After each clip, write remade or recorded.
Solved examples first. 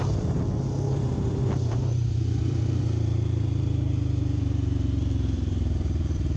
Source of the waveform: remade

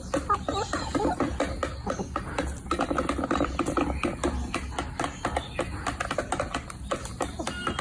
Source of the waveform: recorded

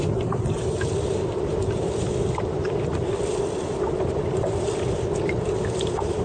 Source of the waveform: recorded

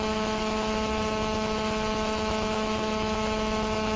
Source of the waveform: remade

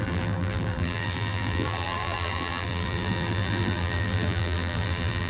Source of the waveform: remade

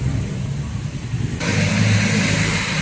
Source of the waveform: remade